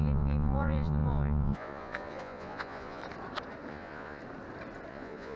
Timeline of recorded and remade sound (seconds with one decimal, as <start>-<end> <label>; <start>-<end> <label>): 0.0-3.0 remade; 3.0-3.7 recorded; 3.7-4.2 remade; 4.2-4.9 recorded; 4.9-5.4 remade